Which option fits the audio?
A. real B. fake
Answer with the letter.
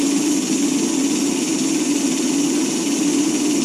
A